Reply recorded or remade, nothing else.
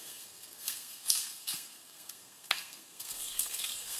remade